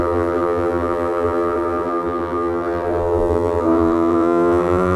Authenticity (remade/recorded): remade